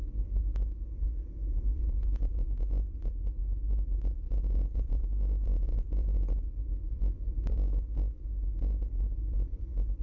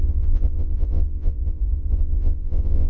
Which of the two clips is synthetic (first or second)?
second